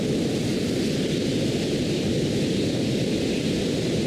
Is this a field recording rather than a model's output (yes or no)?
yes